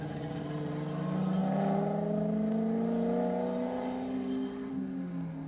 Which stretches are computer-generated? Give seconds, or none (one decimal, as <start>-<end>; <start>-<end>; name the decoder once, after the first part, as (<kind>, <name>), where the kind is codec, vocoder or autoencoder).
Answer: none